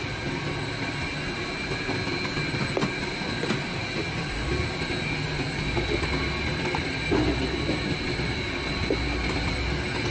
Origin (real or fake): real